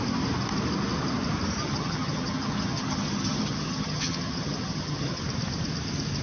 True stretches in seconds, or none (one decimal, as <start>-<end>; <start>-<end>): 0.0-1.6; 5.2-6.2